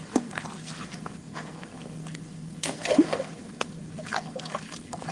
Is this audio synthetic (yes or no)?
yes